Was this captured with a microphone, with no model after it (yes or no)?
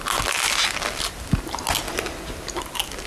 yes